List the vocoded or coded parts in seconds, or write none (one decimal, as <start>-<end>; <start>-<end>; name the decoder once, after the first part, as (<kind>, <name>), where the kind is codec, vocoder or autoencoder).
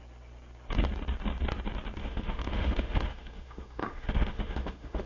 2.0-5.1 (autoencoder, DAC-VAE)